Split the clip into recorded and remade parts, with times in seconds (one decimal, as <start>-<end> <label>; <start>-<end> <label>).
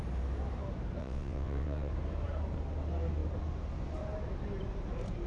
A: 0.0-1.0 recorded; 1.0-1.9 remade; 1.9-5.3 recorded